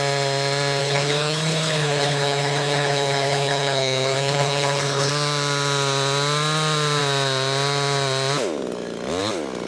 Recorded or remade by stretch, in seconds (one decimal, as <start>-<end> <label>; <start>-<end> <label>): 0.0-0.8 recorded; 0.8-5.1 remade; 5.1-9.7 recorded